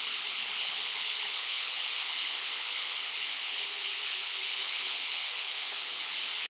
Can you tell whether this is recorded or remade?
remade